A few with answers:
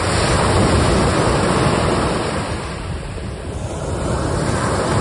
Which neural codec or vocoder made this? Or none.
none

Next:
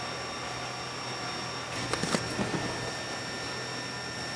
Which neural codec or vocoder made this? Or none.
none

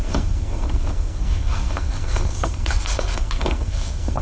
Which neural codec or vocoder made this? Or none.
codec, SNAC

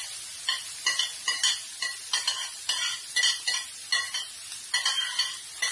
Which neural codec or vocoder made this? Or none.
none